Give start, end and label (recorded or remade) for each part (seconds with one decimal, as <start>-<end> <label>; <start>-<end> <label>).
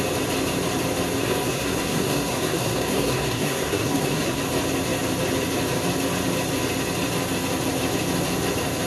0.0-1.2 recorded; 1.2-4.4 remade; 4.4-8.9 recorded